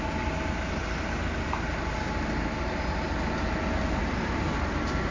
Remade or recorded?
recorded